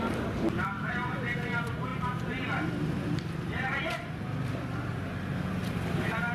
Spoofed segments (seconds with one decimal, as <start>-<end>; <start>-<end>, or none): none